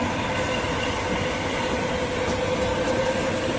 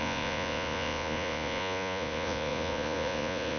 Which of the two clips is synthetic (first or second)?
second